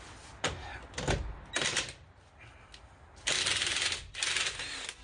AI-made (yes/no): no